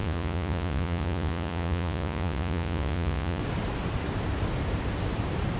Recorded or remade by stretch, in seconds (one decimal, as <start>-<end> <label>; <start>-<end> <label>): 0.0-3.4 remade; 3.4-5.6 recorded